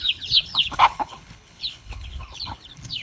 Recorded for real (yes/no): no